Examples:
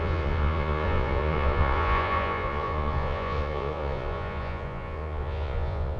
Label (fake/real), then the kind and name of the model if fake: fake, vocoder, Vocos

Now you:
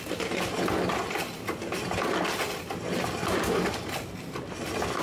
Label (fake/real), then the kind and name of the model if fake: real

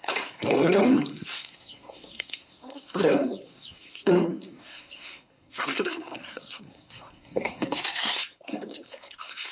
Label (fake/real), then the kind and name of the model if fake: fake, codec, SNAC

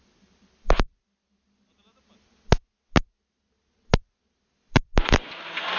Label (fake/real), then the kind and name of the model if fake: real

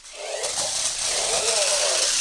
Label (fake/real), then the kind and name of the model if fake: real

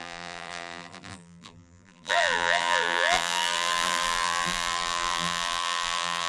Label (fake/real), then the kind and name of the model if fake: fake, vocoder, BigVGAN v2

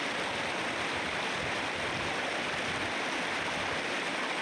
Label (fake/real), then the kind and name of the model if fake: real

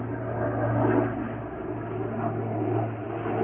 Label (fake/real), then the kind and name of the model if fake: real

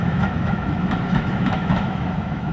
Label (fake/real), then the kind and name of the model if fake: fake, autoencoder, DAC-VAE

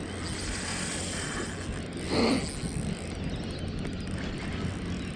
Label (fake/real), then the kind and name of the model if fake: real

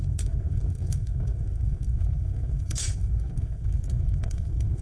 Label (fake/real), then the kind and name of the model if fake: fake, codec, SNAC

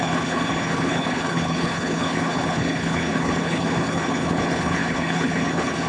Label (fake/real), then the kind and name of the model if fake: fake, codec, HILCodec